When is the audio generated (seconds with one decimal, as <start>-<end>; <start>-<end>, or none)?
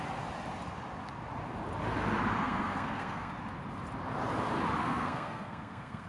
2.4-3.3; 4.8-6.1